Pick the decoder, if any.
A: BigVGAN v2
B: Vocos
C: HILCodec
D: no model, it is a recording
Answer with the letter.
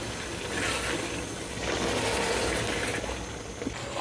D